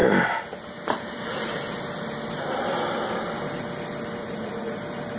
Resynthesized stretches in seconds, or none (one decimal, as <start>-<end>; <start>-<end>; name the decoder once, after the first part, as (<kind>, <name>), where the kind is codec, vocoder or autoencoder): 4.2-4.8 (vocoder, Vocos)